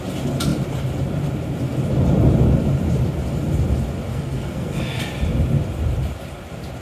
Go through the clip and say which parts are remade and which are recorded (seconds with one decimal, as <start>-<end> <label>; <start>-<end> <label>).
0.0-4.1 recorded; 4.1-5.0 remade; 5.0-6.8 recorded